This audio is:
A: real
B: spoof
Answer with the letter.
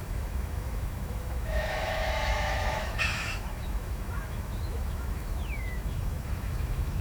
B